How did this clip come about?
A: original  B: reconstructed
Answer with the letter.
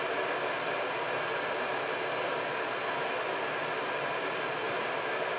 A